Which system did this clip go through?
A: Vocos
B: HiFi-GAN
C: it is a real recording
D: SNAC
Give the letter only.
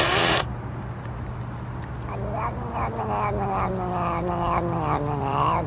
C